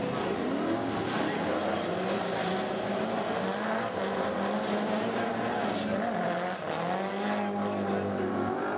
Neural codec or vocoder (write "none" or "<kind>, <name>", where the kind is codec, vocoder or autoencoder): none